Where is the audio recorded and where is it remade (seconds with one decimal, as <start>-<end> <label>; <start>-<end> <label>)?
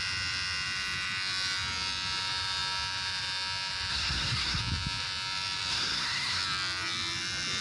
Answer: 0.0-3.9 recorded; 3.9-4.6 remade; 4.6-5.7 recorded; 5.7-6.4 remade; 6.4-7.6 recorded